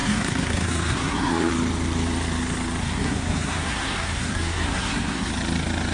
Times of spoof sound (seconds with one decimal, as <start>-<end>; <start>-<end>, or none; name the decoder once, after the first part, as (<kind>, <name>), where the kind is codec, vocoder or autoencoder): 0.0-1.5 (codec, SNAC); 2.8-5.3

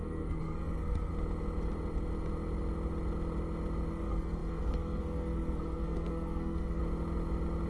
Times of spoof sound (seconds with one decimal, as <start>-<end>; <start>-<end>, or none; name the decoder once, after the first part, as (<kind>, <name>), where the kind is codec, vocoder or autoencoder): 0.0-1.1 (codec, SNAC); 3.9-6.8

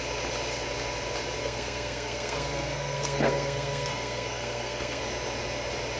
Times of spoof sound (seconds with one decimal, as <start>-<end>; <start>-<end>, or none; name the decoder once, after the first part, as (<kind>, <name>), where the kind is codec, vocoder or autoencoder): 1.4-5.0 (codec, SNAC)

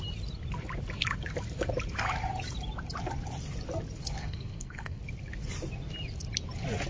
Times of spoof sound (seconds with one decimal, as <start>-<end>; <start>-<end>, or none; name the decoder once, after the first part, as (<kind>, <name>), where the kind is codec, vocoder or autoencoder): 4.2-5.0 (codec, SNAC)

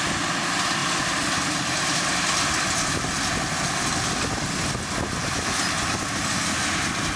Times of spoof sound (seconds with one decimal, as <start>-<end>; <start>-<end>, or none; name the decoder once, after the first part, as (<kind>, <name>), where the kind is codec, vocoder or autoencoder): none

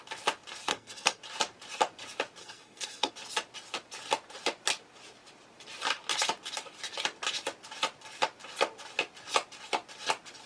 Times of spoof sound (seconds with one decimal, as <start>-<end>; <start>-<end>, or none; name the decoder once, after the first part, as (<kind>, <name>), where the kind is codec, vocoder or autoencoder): 0.7-1.2 (codec, SNAC); 2.4-3.1

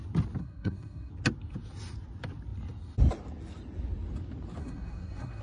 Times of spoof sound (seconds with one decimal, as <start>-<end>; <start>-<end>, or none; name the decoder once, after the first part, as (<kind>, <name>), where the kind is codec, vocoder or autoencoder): 0.4-1.1 (codec, SNAC); 4.6-5.4

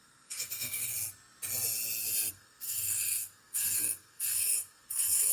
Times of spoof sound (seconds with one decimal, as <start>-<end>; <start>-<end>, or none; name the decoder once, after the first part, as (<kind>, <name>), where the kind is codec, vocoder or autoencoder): 0.0-0.9 (codec, SNAC); 2.3-5.3